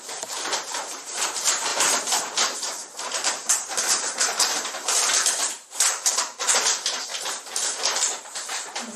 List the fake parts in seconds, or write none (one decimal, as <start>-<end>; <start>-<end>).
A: 0.0-7.1; 8.2-9.0